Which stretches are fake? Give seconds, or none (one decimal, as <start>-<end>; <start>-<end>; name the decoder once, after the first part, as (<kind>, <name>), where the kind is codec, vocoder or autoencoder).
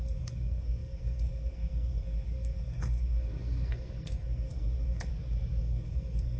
0.0-5.1 (codec, SNAC); 5.6-6.4